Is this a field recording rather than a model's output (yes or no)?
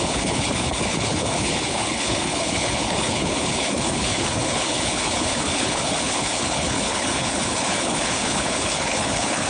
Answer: no